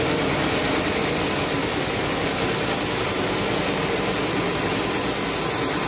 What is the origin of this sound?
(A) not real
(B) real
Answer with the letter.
B